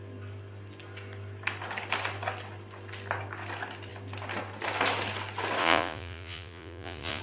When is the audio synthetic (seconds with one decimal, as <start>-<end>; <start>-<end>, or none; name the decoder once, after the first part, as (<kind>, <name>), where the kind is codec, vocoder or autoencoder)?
5.6-7.2 (vocoder, Vocos)